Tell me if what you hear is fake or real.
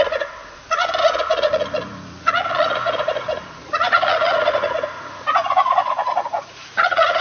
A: fake